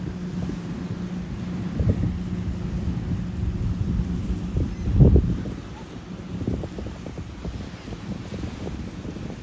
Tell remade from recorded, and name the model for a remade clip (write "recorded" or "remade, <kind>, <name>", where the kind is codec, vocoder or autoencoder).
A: recorded